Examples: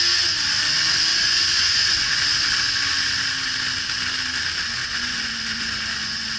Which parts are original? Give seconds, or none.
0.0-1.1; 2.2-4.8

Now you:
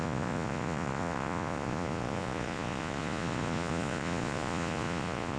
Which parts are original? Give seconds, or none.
none

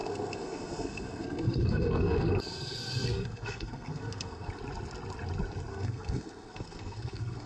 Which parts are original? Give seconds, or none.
4.5-5.7

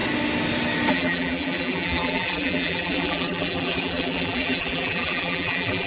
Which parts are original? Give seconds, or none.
0.0-0.9

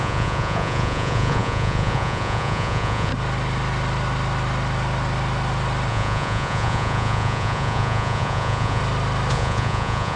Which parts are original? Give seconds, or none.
3.1-5.9; 8.8-9.3

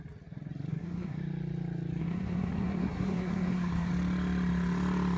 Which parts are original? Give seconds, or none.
0.0-0.7; 1.2-2.0; 3.9-5.2

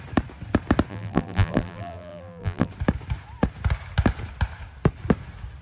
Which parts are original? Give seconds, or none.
0.0-0.9; 2.7-5.6

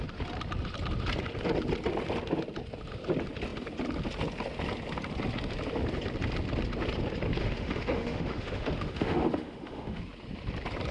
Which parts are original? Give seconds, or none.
0.0-7.4; 10.0-10.9